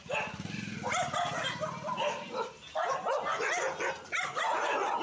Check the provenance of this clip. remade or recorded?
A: recorded